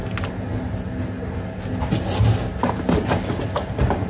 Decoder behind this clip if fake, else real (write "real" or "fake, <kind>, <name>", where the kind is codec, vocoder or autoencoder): real